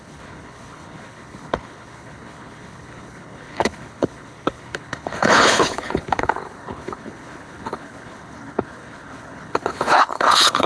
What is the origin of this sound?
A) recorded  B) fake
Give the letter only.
B